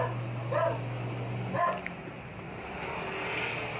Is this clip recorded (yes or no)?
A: yes